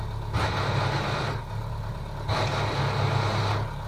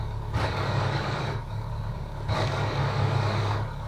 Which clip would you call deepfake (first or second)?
second